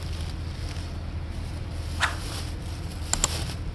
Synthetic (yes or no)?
no